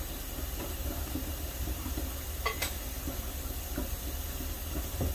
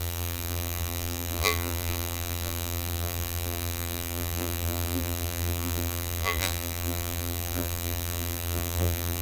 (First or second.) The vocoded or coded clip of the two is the second